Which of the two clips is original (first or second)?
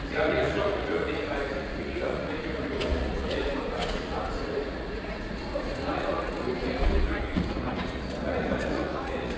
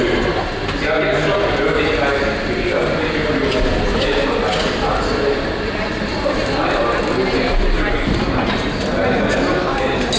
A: second